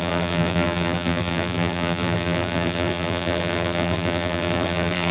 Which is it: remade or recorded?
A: remade